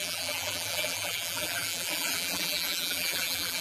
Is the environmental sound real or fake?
fake